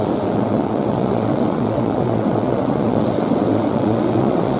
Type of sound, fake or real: fake